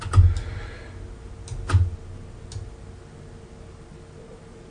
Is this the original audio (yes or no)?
yes